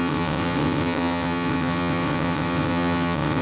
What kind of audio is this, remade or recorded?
remade